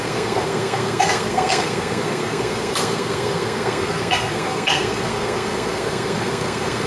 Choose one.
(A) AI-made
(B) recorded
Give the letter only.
A